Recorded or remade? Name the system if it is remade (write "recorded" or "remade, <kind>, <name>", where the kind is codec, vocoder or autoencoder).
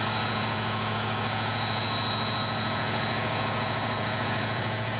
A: remade, vocoder, Vocos